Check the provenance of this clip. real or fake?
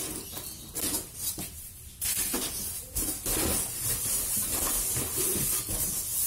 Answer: real